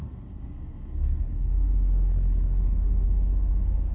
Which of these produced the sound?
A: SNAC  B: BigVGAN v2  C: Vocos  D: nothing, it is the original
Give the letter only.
A